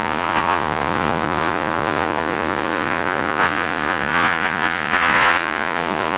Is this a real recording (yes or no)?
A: no